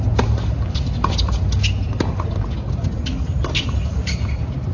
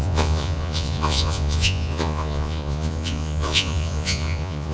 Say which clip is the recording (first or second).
first